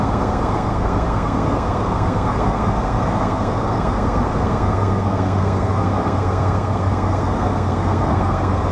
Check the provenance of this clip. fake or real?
fake